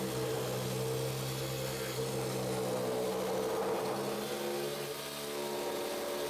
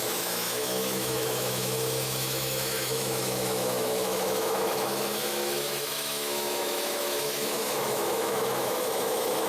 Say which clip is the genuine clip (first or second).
first